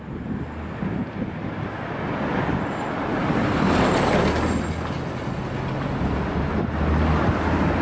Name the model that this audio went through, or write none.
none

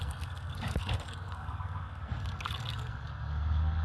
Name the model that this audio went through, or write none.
codec, SNAC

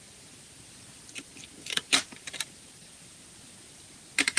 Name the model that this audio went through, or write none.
none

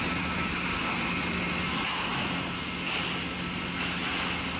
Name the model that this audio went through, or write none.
none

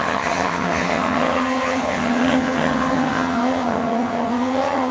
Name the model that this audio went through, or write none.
vocoder, HiFi-GAN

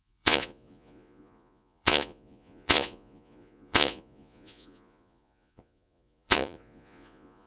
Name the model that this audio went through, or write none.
vocoder, Vocos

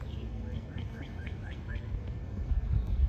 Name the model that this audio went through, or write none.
codec, SNAC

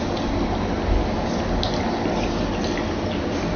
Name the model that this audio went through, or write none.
none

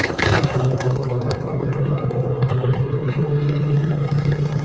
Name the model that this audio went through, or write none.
codec, SNAC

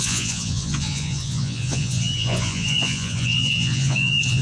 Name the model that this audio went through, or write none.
vocoder, Vocos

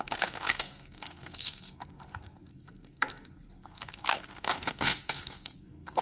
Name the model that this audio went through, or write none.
codec, SNAC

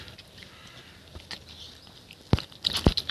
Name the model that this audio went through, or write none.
none